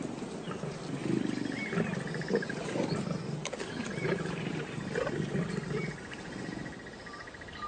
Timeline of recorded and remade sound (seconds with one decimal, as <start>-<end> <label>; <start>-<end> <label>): 0.0-7.7 recorded